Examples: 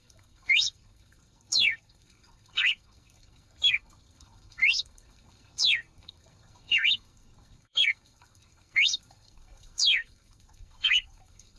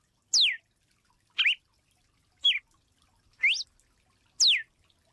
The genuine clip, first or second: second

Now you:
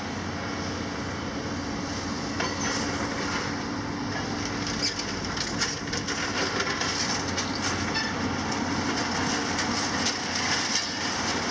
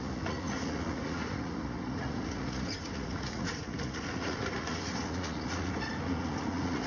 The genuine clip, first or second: first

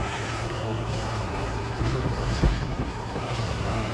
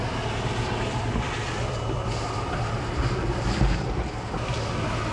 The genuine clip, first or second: second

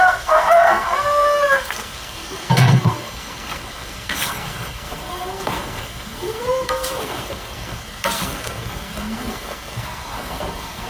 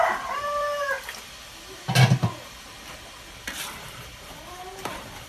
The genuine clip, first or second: second